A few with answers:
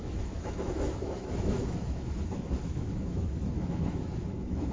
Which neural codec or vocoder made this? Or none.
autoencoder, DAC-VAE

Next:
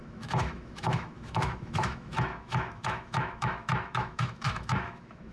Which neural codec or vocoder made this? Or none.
autoencoder, DAC-VAE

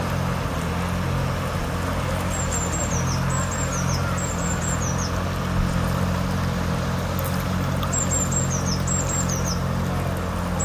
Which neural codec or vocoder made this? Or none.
none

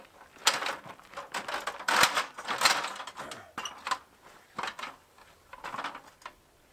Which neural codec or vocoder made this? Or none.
none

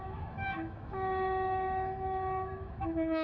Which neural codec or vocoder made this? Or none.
autoencoder, DAC-VAE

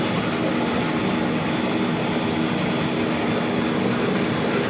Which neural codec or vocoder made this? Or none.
none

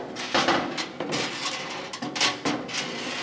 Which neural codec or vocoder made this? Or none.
none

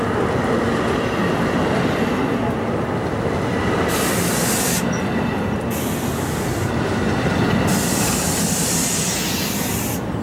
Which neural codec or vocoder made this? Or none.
none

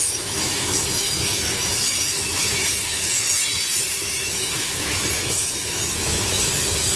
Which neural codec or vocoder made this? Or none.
autoencoder, DAC-VAE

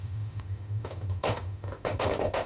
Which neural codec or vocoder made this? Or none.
autoencoder, DAC-VAE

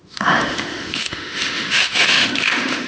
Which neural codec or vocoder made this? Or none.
autoencoder, DAC-VAE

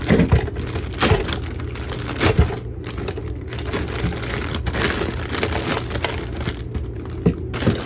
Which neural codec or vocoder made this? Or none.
none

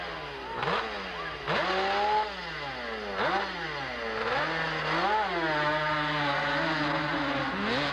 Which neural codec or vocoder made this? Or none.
none